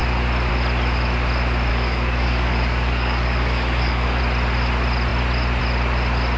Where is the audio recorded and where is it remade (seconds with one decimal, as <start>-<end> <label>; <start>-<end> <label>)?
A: 0.0-1.7 recorded; 1.7-4.2 remade; 4.2-6.4 recorded

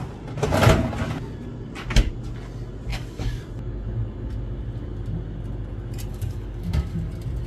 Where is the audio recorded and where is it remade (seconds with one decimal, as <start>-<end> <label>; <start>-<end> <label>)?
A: 0.0-2.9 recorded; 2.9-3.4 remade; 3.4-6.1 recorded; 6.1-7.1 remade; 7.1-7.5 recorded